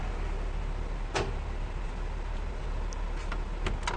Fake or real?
real